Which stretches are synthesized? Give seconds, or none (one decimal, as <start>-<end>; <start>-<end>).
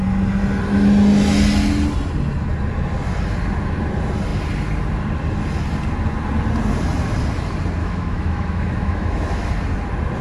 7.8-9.5